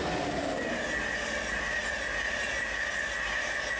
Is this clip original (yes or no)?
yes